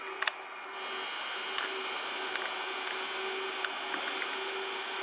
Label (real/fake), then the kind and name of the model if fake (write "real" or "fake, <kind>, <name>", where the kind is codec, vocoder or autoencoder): real